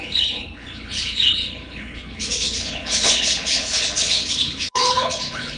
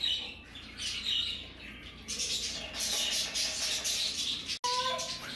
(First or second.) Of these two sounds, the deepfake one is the first